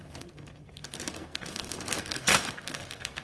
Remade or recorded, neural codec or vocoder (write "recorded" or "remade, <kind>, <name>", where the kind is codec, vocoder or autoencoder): remade, codec, SNAC